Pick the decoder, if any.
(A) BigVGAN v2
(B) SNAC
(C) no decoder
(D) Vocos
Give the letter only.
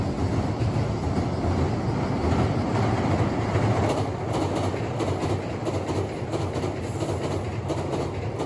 C